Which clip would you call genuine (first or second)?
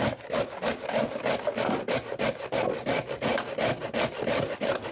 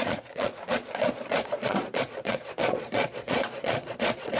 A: first